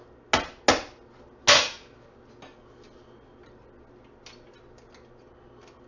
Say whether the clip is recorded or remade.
recorded